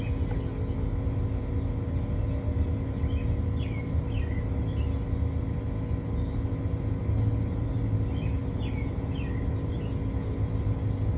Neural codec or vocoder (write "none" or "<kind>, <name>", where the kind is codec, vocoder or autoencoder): none